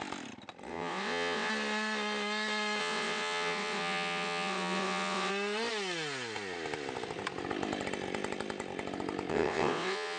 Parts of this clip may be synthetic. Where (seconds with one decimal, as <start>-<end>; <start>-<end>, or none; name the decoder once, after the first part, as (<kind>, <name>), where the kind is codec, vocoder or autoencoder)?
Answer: 0.7-1.5 (vocoder, WaveNeXt); 2.8-5.3; 9.3-10.2